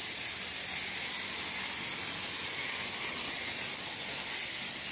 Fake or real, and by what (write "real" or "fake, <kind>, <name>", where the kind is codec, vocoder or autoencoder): real